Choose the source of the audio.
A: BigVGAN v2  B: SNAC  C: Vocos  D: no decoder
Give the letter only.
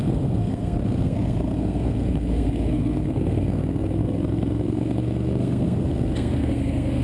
B